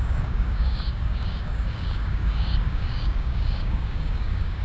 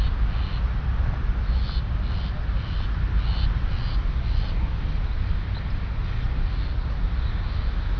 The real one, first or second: second